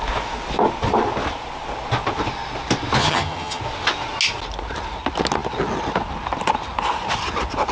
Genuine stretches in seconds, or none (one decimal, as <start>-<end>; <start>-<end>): 0.0-3.0; 3.6-7.7